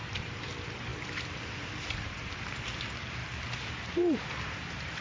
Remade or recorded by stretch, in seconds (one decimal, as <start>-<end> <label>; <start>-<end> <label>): 0.0-0.5 remade; 0.5-0.9 recorded; 0.9-2.3 remade; 2.3-3.2 recorded; 3.2-5.0 remade